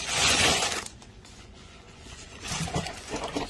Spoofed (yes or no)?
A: yes